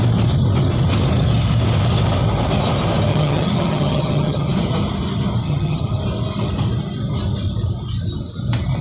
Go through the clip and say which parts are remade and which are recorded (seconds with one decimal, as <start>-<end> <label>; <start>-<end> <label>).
0.0-3.1 recorded; 3.1-4.5 remade; 4.5-5.4 recorded; 5.4-6.0 remade; 6.0-8.8 recorded